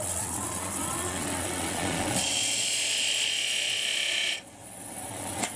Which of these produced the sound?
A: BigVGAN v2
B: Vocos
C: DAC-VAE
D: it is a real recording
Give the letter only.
B